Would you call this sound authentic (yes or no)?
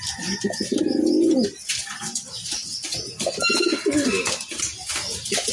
yes